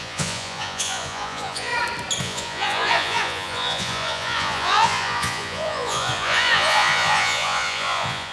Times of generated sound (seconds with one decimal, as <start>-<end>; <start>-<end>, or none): 0.0-1.7; 2.2-8.3